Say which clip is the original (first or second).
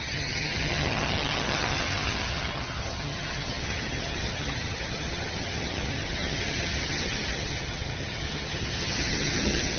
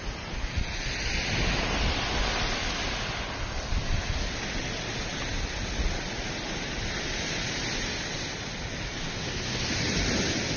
second